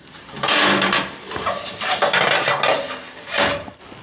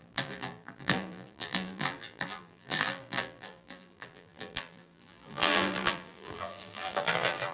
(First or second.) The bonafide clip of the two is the first